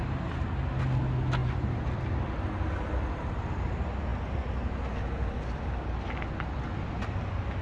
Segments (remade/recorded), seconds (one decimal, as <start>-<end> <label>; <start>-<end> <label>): 0.0-1.4 recorded; 1.4-2.1 remade; 2.1-7.6 recorded